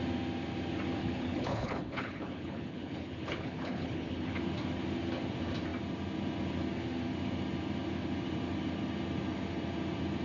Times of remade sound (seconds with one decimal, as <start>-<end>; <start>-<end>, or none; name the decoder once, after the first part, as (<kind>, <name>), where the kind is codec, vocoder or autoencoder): 1.0-4.4 (codec, HILCodec)